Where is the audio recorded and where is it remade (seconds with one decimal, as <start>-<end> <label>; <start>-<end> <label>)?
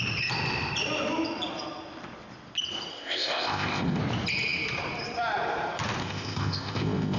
0.0-2.9 recorded; 2.9-4.0 remade; 4.0-6.0 recorded; 6.0-7.2 remade